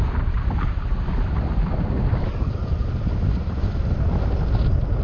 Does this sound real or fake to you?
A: real